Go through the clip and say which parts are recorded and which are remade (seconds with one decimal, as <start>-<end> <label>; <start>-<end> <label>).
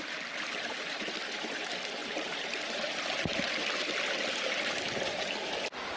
0.0-2.0 recorded; 2.0-2.6 remade; 2.6-6.0 recorded